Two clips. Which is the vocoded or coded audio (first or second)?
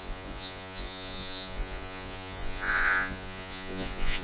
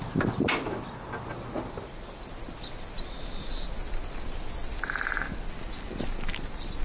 first